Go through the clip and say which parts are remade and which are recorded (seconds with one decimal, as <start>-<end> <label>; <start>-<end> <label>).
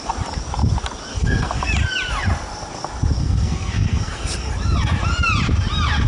0.0-1.1 recorded; 1.1-1.7 remade; 1.7-3.2 recorded; 3.2-4.5 remade; 4.5-6.1 recorded